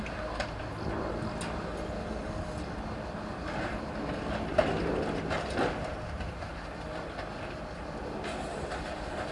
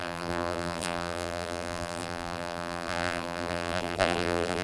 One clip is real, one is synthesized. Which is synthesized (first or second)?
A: second